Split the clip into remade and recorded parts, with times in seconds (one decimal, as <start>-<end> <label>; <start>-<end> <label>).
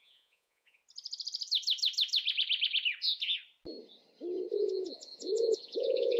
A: 0.0-0.8 remade; 0.8-4.5 recorded; 4.5-6.2 remade